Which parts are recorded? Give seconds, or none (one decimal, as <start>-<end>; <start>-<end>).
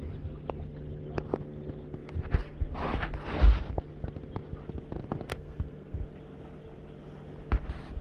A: 0.0-5.3; 6.0-8.0